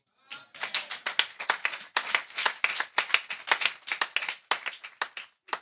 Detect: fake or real real